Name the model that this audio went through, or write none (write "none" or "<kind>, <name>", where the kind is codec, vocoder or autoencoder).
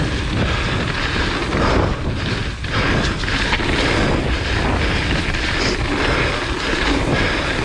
none